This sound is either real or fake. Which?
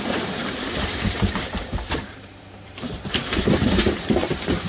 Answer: fake